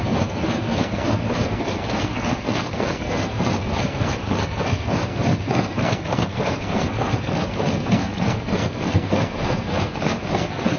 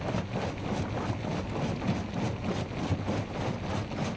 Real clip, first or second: second